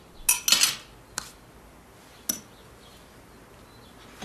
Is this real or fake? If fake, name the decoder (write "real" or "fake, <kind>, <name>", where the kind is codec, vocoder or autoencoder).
real